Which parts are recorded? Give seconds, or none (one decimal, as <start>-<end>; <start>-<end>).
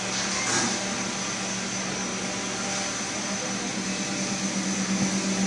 0.0-5.5